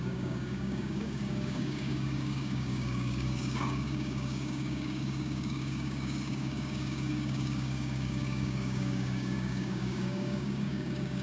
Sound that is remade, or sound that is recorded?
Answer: remade